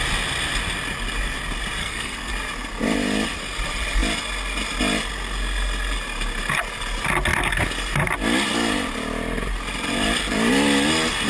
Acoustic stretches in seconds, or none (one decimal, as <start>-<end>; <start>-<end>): 0.0-1.8; 2.3-11.3